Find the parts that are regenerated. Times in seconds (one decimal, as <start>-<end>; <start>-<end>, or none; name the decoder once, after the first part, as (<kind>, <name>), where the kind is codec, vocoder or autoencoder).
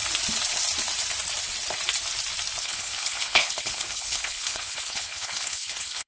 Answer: 2.6-6.1 (codec, HILCodec)